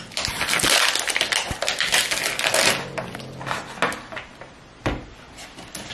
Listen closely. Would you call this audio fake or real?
real